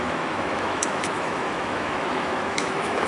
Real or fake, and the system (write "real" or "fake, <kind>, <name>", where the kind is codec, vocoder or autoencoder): fake, autoencoder, DAC-VAE